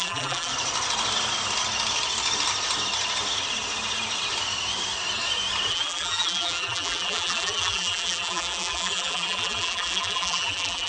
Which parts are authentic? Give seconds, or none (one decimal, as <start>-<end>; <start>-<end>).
0.5-5.7